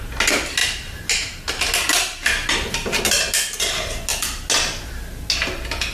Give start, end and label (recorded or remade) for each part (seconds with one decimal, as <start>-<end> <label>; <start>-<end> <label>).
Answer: 0.0-5.9 recorded